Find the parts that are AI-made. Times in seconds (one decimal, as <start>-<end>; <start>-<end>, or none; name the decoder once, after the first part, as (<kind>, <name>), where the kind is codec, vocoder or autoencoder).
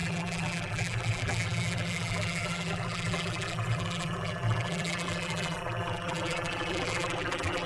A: 0.0-7.7 (vocoder, BigVGAN v2)